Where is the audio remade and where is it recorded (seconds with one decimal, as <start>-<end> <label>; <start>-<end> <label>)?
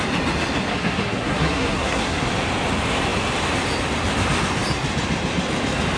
0.0-0.7 recorded; 0.7-2.3 remade; 2.3-6.0 recorded